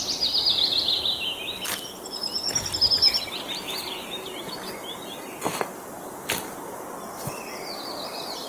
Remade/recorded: recorded